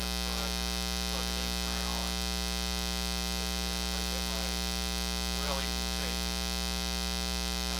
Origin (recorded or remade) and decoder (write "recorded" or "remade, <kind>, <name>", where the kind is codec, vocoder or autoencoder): recorded